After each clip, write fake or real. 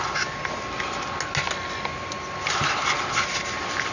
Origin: real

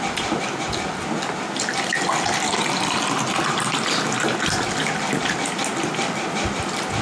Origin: real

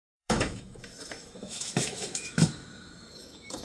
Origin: fake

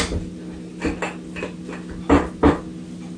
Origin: real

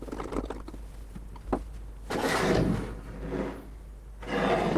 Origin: real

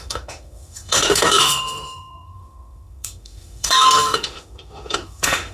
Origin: fake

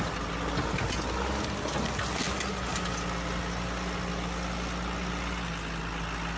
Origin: real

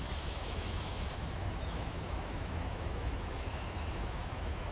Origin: fake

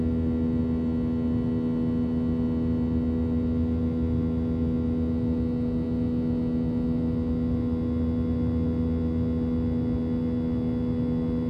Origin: real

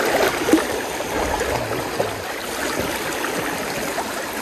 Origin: real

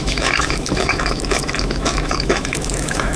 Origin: fake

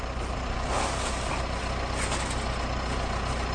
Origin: real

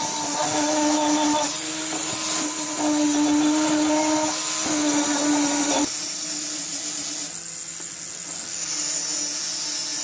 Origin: real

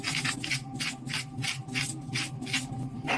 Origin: real